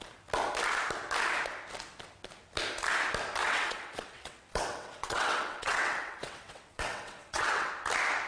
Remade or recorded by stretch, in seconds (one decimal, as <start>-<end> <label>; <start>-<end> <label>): 0.0-3.4 recorded; 3.4-7.7 remade; 7.7-8.3 recorded